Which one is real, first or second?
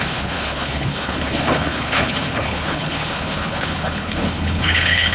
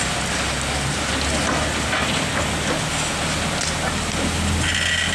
second